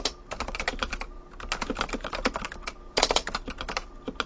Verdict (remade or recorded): recorded